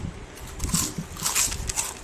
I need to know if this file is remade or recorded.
recorded